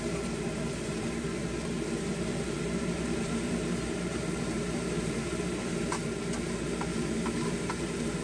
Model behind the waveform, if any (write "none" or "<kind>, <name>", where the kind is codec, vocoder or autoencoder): vocoder, BigVGAN v2